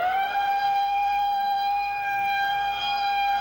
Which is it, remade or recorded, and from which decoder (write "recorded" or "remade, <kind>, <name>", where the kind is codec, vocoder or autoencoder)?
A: remade, codec, SNAC